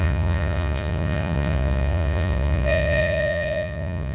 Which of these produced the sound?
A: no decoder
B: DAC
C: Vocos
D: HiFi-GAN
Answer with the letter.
C